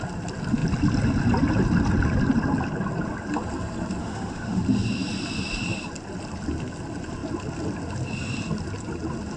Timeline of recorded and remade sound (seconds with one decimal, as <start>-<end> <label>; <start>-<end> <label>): 0.0-4.0 recorded; 4.0-4.6 remade; 4.6-9.4 recorded